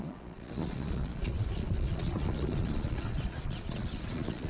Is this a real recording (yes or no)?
no